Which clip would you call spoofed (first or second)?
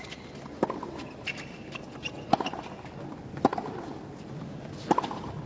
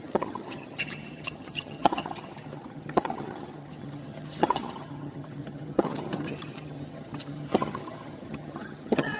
second